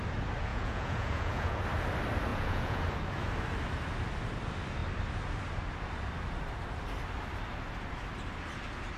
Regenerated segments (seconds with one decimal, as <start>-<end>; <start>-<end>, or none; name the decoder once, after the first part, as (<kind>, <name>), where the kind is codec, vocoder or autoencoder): 0.5-1.6 (vocoder, Vocos); 2.3-2.8